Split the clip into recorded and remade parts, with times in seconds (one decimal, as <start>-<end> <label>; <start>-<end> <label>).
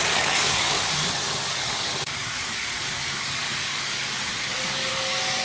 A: 0.0-5.4 remade